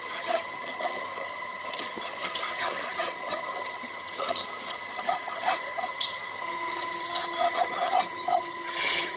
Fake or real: fake